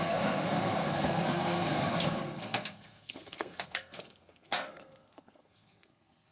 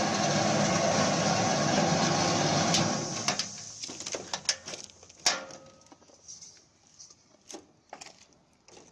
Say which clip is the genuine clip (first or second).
second